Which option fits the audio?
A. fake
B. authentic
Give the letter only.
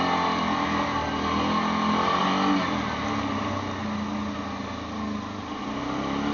B